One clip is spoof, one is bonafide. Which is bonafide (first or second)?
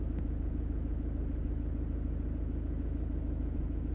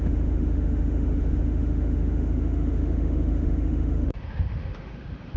first